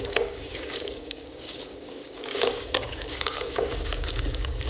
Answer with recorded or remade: remade